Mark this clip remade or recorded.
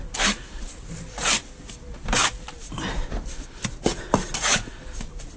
recorded